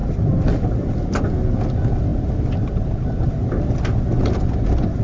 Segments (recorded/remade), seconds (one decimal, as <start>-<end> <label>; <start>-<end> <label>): 0.0-5.0 recorded